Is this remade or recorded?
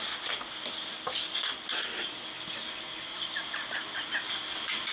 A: recorded